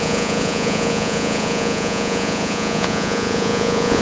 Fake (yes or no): yes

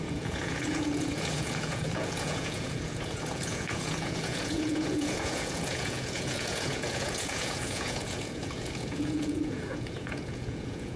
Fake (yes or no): yes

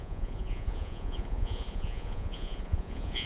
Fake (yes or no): yes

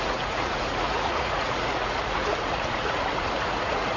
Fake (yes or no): yes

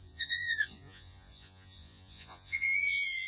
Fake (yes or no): yes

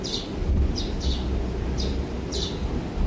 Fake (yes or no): no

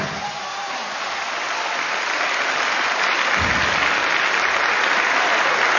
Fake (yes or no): no